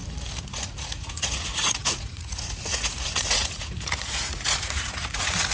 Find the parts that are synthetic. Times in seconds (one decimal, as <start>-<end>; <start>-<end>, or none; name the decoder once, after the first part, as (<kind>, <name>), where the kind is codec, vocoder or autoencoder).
0.5-5.5 (vocoder, Vocos)